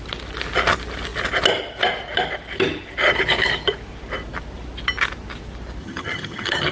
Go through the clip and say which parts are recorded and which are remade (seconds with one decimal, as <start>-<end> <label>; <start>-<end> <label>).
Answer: 0.0-5.8 recorded; 5.8-6.7 remade